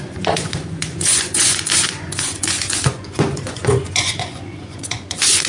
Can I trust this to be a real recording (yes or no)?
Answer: no